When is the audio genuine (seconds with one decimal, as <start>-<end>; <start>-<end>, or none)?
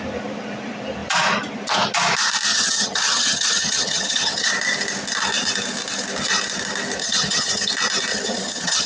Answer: 0.0-2.5; 4.5-7.0; 7.7-8.1